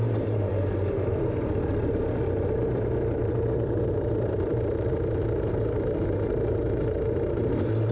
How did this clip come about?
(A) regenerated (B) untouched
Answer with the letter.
A